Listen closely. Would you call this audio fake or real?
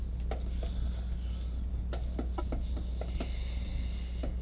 real